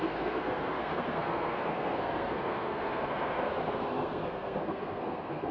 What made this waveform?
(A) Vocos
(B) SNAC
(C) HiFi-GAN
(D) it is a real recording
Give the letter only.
B